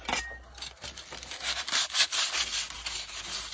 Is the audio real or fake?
real